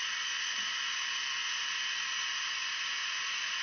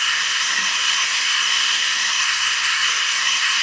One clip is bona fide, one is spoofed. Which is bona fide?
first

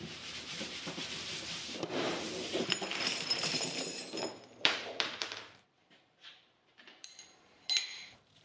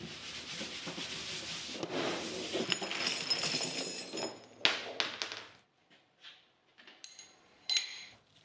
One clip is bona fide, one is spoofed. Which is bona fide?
second